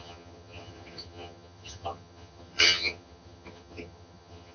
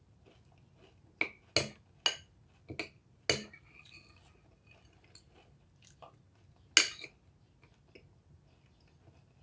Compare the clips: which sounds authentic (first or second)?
second